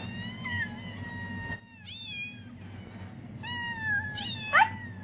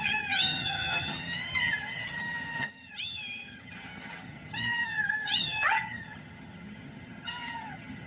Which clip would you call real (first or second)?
first